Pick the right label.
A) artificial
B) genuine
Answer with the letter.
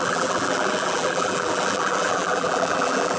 A